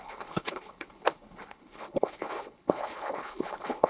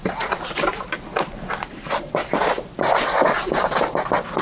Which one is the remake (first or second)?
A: first